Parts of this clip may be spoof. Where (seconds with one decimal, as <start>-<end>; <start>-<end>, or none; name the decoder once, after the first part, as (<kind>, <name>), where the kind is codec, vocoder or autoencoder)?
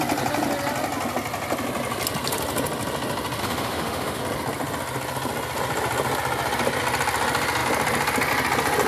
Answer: 3.4-4.2 (autoencoder, DAC-VAE)